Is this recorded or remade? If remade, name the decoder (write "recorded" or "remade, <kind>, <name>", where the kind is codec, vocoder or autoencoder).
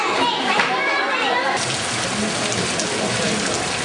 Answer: recorded